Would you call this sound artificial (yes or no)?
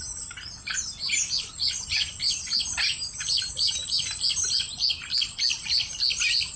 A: no